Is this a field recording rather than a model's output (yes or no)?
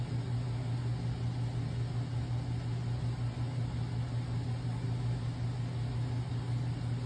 yes